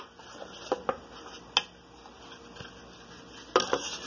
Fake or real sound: real